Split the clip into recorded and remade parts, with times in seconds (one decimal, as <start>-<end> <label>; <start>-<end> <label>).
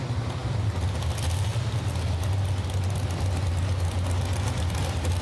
0.0-5.2 recorded